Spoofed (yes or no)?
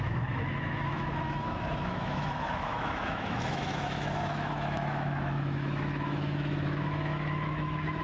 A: yes